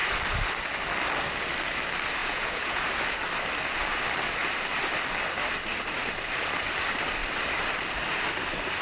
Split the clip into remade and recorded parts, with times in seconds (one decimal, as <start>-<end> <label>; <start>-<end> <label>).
0.0-2.2 recorded; 2.2-2.8 remade; 2.8-8.8 recorded